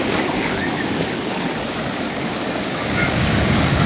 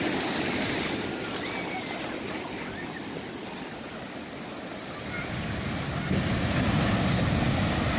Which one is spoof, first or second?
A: first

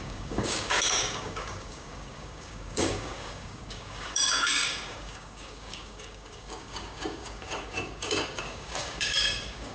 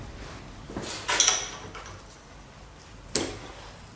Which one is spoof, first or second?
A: first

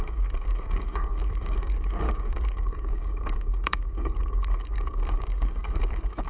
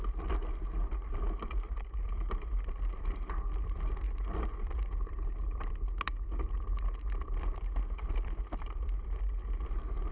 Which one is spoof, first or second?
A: first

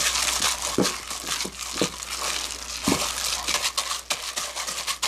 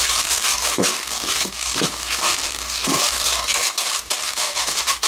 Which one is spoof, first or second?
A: second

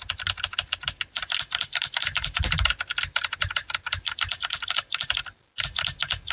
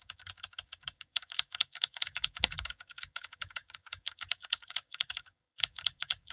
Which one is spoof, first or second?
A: second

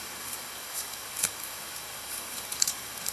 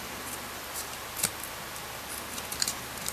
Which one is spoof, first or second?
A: first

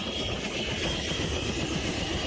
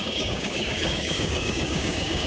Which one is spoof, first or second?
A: second